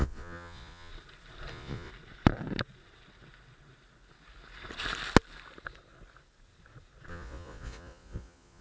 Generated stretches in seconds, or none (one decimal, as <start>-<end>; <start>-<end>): 0.0-0.9; 1.5-1.9; 7.1-8.6